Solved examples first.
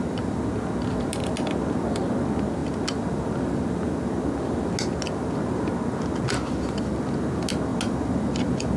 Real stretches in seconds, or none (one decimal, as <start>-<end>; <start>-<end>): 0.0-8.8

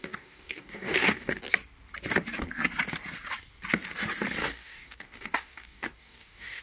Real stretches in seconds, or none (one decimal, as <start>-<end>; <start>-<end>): 1.4-4.4

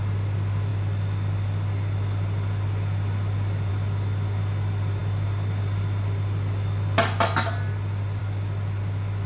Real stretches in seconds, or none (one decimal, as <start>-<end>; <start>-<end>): 0.0-9.3

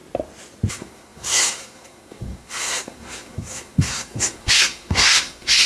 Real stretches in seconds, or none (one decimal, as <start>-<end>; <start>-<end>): 0.0-0.7

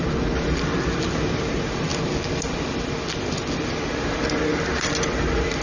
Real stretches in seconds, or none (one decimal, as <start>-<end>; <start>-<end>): 0.0-5.6